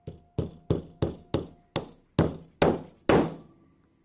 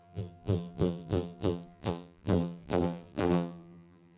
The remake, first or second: second